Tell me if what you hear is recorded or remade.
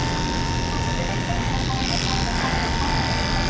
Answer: recorded